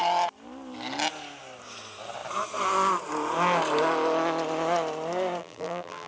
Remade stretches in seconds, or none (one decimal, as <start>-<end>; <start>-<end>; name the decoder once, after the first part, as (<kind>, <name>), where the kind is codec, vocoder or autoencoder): 5.4-6.1 (vocoder, BigVGAN v2)

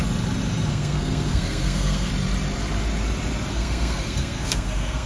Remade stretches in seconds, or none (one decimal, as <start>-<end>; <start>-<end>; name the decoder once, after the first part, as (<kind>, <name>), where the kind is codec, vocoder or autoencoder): 0.7-2.1 (codec, SNAC); 3.5-5.1

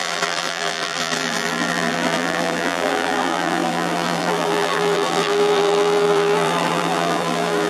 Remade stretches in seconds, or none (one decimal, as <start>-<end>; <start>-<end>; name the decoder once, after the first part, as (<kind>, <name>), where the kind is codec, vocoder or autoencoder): 0.0-7.7 (vocoder, BigVGAN v2)

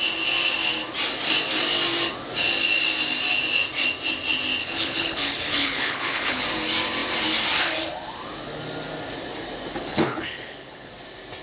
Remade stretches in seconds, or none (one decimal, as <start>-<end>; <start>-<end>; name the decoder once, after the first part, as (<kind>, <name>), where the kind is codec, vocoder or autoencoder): 4.6-6.4 (codec, HILCodec); 9.8-10.9

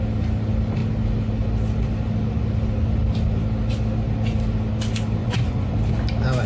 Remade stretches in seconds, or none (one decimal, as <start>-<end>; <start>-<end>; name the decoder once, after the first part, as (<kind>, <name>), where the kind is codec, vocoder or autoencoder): 5.2-5.7 (vocoder, Vocos)

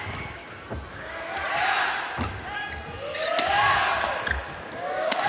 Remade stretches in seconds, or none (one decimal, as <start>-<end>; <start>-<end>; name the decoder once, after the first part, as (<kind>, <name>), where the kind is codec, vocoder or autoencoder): 0.0-0.4 (codec, DAC); 0.9-1.4; 4.6-5.3

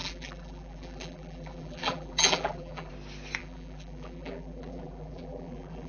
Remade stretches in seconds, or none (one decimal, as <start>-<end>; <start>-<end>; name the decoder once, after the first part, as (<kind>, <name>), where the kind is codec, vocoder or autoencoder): 0.0-2.9 (vocoder, BigVGAN v2); 3.4-5.9